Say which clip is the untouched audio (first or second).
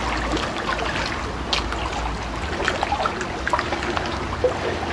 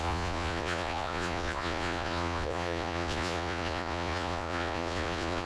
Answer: first